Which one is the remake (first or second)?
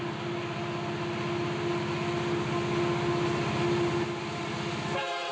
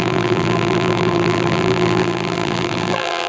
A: second